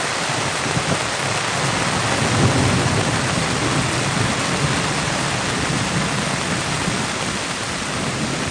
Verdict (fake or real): real